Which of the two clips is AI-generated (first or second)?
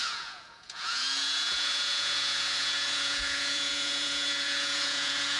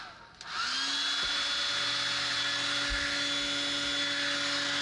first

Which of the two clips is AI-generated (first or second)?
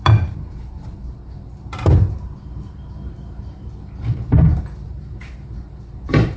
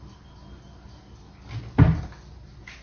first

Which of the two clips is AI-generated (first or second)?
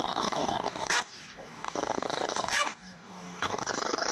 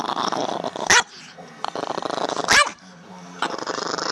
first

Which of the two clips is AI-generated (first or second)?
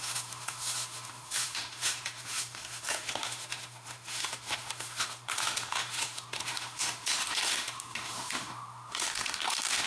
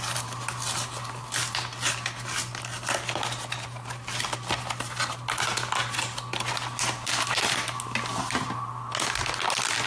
first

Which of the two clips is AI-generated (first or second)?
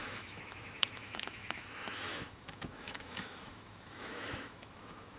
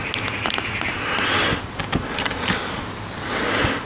first